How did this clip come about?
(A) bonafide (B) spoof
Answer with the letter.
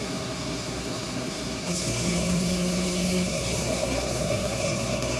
B